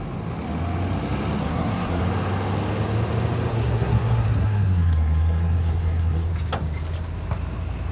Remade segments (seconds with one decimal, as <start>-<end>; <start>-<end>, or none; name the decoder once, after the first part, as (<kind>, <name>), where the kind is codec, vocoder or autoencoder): 1.4-2.0 (codec, SNAC); 3.5-6.3